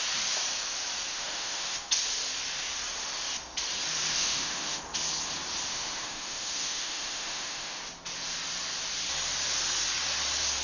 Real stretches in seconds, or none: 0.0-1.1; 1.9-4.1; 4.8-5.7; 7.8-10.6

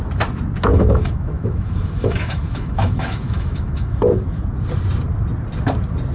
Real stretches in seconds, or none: 0.0-0.7; 4.4-6.1

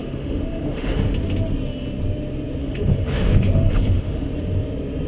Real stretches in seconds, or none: 1.1-2.6; 4.3-5.1

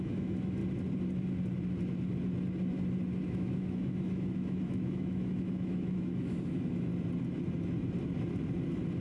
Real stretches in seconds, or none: 0.6-3.3; 6.9-9.0

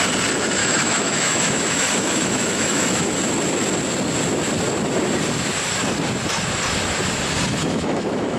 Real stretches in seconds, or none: 0.0-0.6; 3.2-7.6